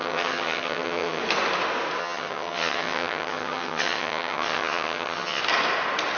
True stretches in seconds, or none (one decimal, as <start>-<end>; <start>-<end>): 1.2-2.0; 5.4-6.2